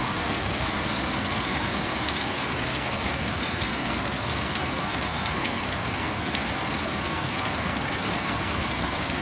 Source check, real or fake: fake